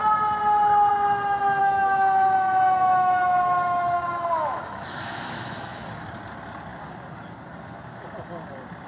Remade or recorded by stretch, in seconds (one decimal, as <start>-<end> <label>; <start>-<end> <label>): 0.0-1.6 recorded; 1.6-5.8 remade; 5.8-8.9 recorded